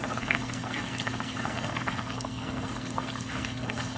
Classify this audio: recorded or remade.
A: remade